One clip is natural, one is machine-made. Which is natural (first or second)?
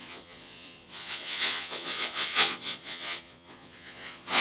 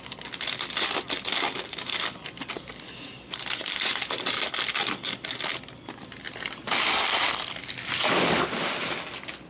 second